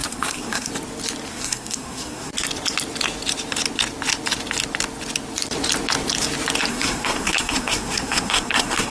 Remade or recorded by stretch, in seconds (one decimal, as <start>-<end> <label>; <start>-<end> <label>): 0.0-0.7 remade; 0.7-1.3 recorded; 1.3-2.3 remade; 2.3-6.7 recorded; 6.7-8.9 remade